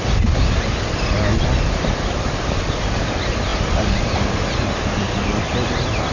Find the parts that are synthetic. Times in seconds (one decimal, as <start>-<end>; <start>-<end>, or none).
none